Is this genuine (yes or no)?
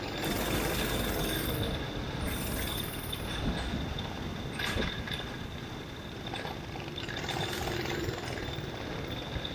yes